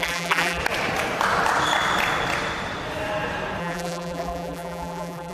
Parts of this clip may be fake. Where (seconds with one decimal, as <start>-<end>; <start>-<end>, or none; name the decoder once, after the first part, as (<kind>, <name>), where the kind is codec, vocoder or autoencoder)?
0.0-0.6 (vocoder, BigVGAN v2); 3.6-5.3